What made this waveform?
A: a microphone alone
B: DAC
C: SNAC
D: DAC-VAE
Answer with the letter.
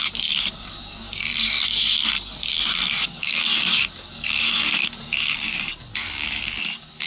B